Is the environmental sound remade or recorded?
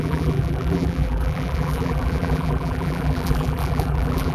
remade